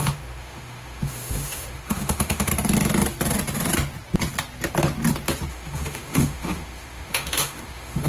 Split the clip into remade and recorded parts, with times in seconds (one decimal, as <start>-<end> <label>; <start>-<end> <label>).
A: 0.0-2.5 remade; 2.5-5.5 recorded; 5.5-8.1 remade